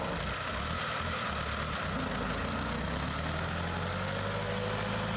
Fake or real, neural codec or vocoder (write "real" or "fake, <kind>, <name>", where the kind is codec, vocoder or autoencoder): real